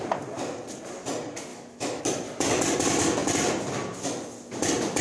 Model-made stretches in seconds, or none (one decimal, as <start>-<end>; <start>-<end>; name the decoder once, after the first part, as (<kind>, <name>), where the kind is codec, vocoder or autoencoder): 1.5-2.0 (autoencoder, DAC-VAE)